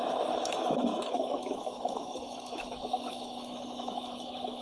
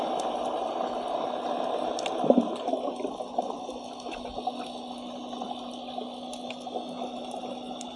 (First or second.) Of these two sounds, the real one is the second